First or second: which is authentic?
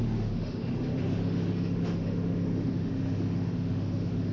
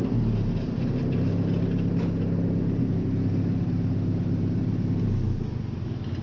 second